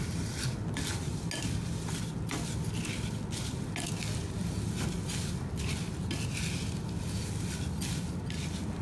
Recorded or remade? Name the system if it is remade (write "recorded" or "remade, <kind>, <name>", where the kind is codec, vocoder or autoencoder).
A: recorded